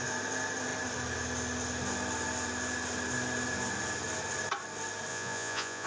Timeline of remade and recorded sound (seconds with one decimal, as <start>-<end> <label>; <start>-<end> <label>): 0.0-5.1 recorded; 5.1-5.9 remade